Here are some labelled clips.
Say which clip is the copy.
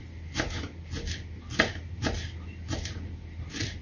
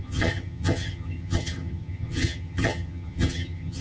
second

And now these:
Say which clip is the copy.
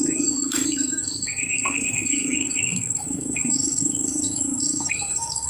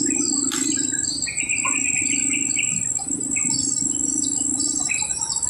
first